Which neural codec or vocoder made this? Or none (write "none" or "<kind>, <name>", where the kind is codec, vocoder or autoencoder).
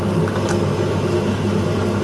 none